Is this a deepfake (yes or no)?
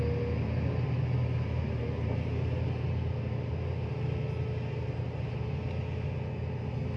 no